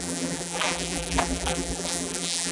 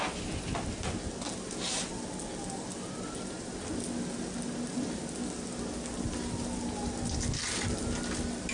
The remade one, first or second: first